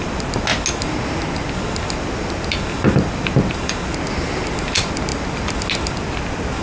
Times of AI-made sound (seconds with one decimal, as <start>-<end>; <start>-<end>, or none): none